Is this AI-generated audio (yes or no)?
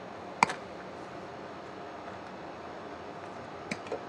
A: no